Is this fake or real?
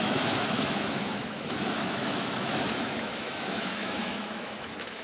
fake